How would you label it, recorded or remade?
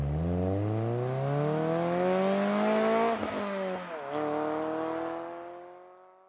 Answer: recorded